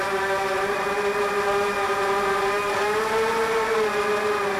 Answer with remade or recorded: recorded